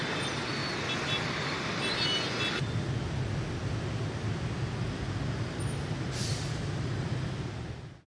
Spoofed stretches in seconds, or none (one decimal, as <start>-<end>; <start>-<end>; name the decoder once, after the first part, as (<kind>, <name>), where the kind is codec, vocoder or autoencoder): none